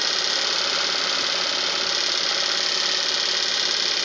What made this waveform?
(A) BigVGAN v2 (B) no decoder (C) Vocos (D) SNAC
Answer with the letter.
B